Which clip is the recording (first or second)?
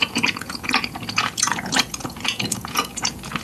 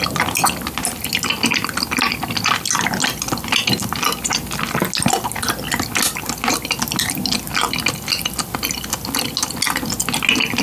second